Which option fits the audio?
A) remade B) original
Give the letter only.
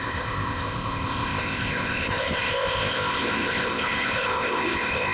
A